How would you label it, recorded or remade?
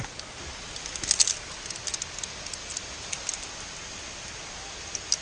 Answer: recorded